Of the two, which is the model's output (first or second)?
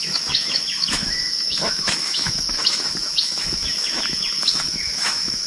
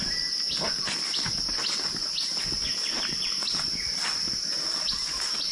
first